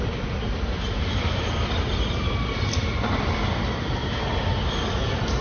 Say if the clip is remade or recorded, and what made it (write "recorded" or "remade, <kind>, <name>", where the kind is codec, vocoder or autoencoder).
recorded